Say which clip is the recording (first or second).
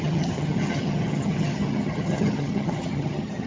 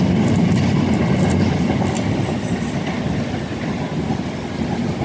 second